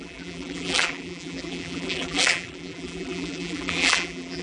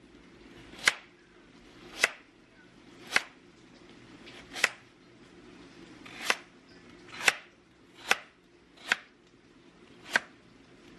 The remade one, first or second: first